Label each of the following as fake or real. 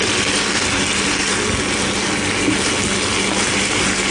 real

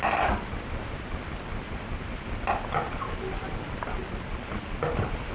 real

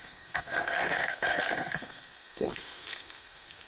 fake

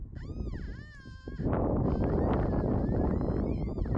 real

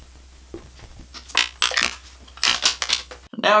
real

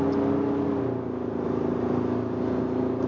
real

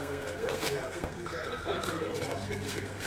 fake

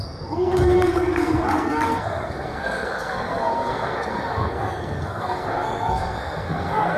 fake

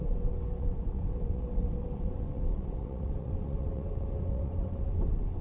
fake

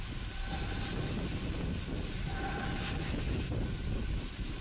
real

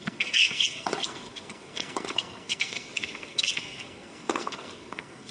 fake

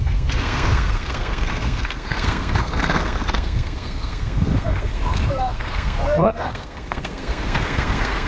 fake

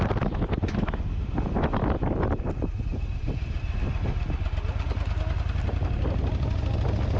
real